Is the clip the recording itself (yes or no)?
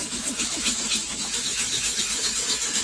no